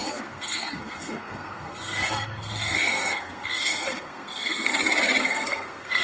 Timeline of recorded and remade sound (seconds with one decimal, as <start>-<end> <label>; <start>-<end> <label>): 0.0-4.7 remade; 4.7-5.2 recorded; 5.2-6.0 remade